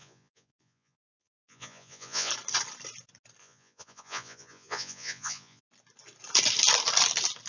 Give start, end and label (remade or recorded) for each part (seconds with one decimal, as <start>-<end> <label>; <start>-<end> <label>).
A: 0.0-2.3 remade; 2.3-3.4 recorded; 3.4-5.6 remade; 5.6-7.5 recorded